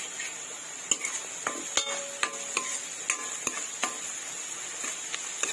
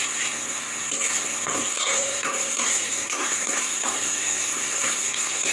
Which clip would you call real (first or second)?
first